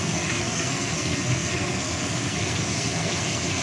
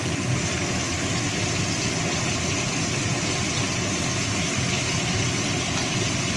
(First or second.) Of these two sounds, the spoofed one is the first